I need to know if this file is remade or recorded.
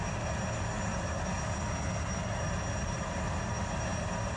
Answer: recorded